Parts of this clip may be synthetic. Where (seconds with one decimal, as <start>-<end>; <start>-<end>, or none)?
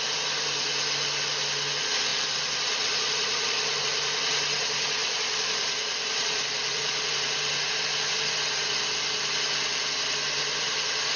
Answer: 2.1-3.8; 5.0-7.1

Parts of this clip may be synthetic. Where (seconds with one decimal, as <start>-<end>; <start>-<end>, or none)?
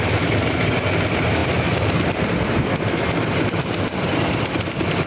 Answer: 1.4-4.5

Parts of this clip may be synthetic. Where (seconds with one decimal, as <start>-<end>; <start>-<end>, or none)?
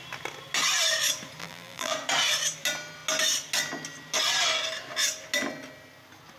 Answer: 1.4-1.9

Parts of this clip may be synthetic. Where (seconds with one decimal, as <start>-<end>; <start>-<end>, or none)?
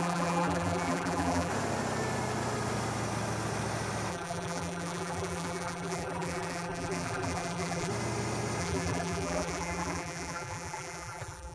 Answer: 0.0-1.5; 4.1-7.9; 8.6-11.5